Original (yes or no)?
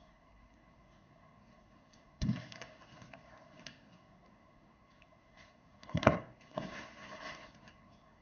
no